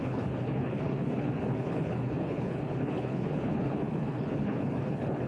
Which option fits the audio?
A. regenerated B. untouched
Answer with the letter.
A